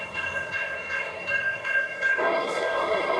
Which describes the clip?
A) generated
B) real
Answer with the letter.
A